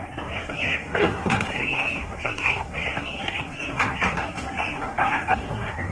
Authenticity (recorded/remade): remade